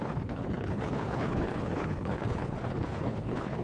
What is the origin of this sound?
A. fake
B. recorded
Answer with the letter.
A